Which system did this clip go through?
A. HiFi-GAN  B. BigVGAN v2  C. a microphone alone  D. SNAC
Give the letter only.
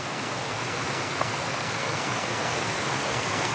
D